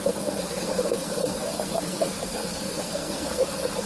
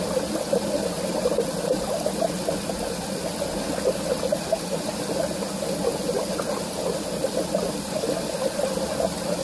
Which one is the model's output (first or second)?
first